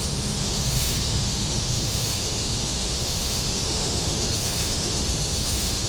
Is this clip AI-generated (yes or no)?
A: yes